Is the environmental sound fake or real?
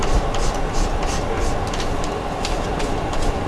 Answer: real